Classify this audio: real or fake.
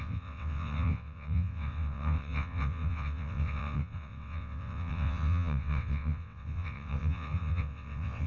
fake